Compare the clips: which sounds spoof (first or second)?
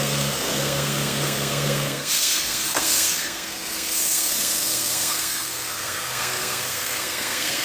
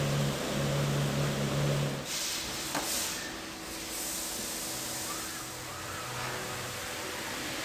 first